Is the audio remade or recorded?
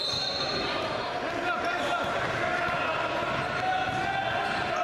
recorded